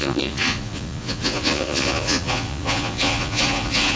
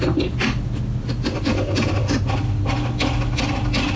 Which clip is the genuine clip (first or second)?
second